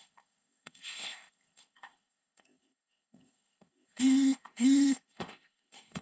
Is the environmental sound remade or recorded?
remade